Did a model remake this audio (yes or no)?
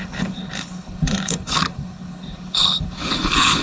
yes